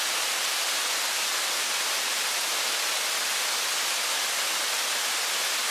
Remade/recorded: recorded